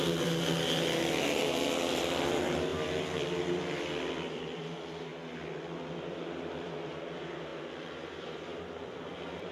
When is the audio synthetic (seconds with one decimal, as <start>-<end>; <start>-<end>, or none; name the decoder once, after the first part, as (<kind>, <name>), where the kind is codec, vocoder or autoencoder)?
0.0-5.1 (vocoder, BigVGAN v2); 6.0-9.5